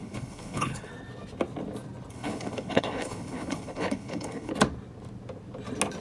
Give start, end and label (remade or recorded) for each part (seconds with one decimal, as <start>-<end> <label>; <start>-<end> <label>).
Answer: 0.0-0.9 remade; 0.9-2.1 recorded; 2.1-4.5 remade; 4.5-6.0 recorded